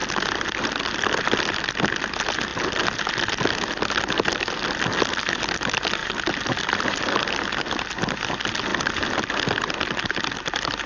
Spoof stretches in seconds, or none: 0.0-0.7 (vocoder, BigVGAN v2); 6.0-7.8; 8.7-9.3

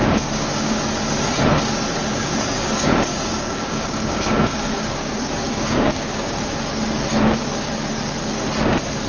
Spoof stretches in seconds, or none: 0.0-0.8 (codec, DAC); 2.1-6.6

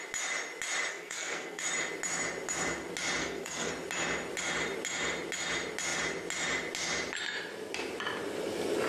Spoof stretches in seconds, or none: 0.9-1.6 (codec, SNAC); 3.2-3.7

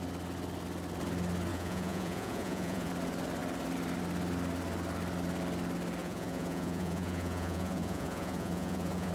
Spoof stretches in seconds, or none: 1.5-2.9 (vocoder, Vocos); 6.0-9.1

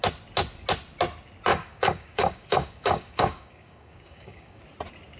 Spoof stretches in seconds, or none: 1.5-4.6 (codec, DAC)

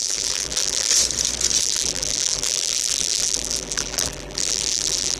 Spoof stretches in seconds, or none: 0.0-0.9 (vocoder, BigVGAN v2); 1.6-5.2